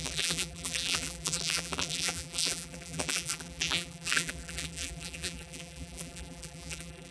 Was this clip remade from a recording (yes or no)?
yes